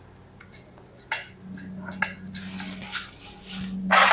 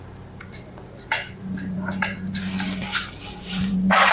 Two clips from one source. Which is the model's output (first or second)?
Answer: second